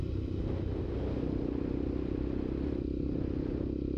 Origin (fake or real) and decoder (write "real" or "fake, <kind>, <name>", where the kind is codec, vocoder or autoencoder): real